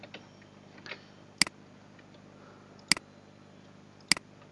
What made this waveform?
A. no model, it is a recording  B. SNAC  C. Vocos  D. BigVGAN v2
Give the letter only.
A